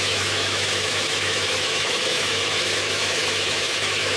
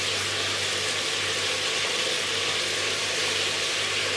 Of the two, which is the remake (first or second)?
first